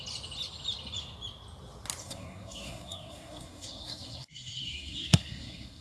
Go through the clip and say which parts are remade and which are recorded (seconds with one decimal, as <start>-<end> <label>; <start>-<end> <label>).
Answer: 0.0-2.0 recorded; 2.0-5.8 remade